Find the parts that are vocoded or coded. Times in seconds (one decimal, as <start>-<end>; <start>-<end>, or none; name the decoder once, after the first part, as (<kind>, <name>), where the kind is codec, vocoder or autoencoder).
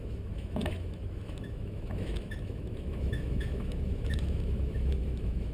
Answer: 0.0-5.5 (autoencoder, DAC-VAE)